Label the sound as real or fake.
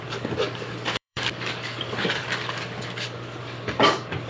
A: fake